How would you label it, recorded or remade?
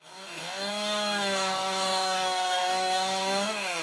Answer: remade